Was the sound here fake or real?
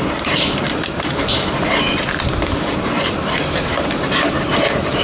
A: fake